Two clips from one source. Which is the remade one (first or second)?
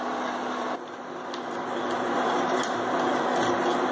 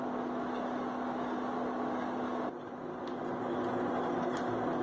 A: first